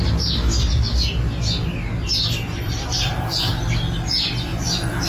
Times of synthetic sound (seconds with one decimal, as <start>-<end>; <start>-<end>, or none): 2.5-3.5; 4.5-5.1